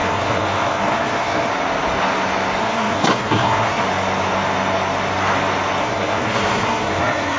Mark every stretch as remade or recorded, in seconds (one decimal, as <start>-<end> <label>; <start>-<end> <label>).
0.0-1.5 remade; 1.5-2.6 recorded; 2.6-3.8 remade; 3.8-5.8 recorded; 5.8-7.4 remade